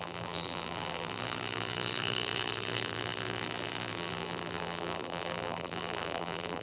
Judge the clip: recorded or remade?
remade